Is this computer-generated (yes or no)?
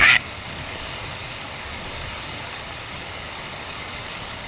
yes